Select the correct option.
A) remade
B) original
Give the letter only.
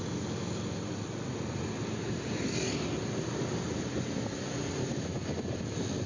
B